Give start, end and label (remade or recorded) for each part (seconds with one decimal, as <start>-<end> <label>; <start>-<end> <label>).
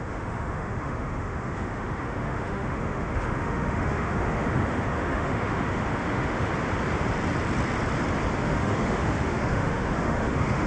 0.0-6.5 remade; 6.5-8.4 recorded; 8.4-10.7 remade